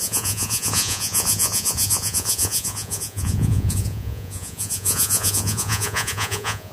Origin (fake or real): fake